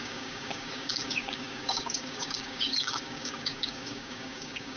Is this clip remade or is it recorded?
remade